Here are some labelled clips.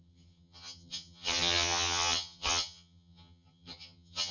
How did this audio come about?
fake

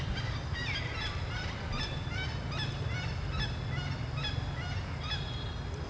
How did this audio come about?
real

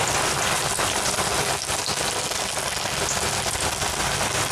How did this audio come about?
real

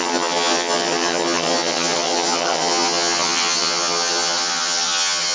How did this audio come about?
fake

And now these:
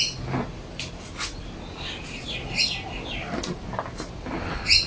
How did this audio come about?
real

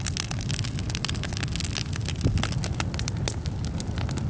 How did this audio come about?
real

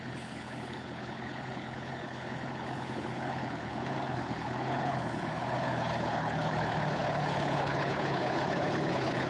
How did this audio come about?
fake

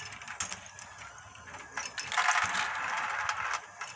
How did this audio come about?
real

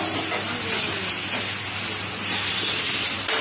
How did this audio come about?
real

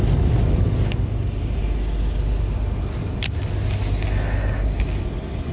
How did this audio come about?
real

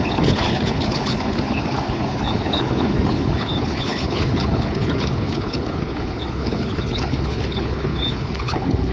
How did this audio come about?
fake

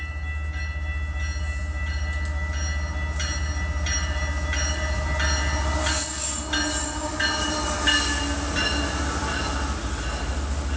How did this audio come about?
real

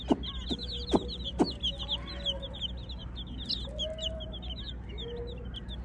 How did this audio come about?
real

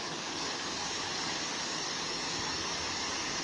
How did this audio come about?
fake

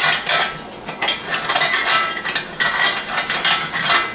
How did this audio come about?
real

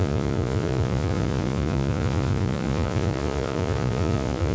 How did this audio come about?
fake